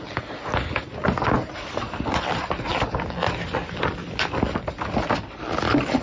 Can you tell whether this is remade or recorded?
recorded